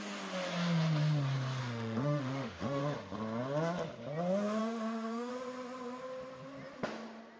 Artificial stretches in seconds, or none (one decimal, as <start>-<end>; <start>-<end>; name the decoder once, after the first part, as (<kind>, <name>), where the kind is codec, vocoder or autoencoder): 1.6-2.8 (autoencoder, DAC-VAE); 4.6-5.3